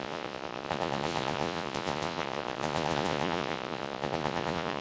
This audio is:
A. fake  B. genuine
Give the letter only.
A